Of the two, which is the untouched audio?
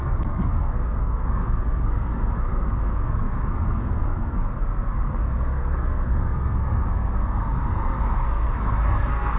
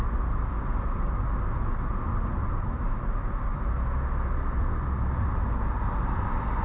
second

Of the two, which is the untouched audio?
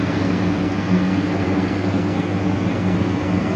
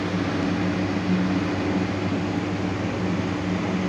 second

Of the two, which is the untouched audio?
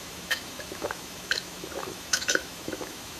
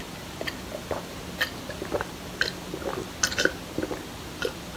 second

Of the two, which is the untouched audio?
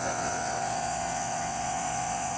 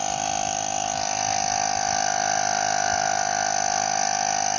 second